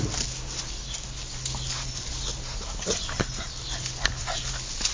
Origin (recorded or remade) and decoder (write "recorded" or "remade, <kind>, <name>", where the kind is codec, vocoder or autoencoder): recorded